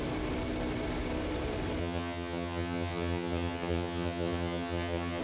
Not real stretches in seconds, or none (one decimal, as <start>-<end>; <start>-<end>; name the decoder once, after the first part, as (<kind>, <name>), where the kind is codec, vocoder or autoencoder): 1.8-5.2 (vocoder, HiFi-GAN)